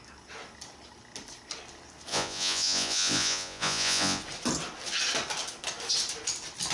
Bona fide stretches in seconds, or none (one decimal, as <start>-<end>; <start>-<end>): 0.0-2.1; 4.2-6.7